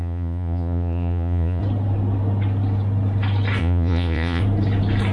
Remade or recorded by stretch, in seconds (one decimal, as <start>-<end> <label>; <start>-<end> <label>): 0.0-1.6 remade; 1.6-3.6 recorded; 3.6-4.4 remade; 4.4-5.1 recorded